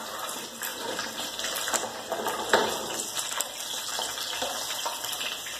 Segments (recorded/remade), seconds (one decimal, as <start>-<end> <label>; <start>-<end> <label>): 0.0-0.7 recorded; 0.7-1.3 remade; 1.3-5.6 recorded